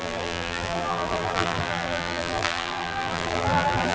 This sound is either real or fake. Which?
fake